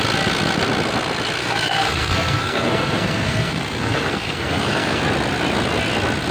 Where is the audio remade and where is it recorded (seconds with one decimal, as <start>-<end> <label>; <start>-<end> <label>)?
0.0-1.4 recorded; 1.4-5.0 remade; 5.0-6.3 recorded